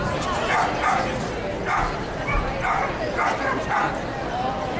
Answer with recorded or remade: recorded